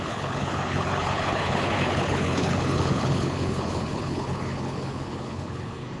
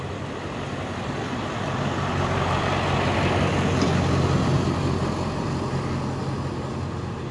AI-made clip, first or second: first